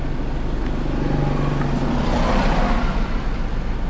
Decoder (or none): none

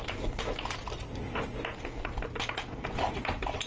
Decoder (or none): none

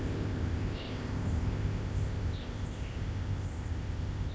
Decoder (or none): codec, ZipCodec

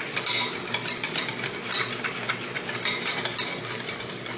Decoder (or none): none